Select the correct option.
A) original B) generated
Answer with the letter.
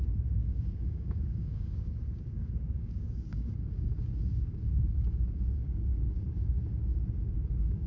B